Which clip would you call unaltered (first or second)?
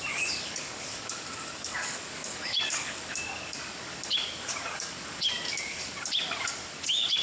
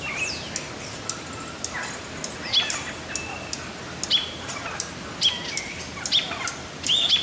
second